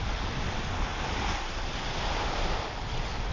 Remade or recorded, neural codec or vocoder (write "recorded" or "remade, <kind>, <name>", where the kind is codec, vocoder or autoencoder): recorded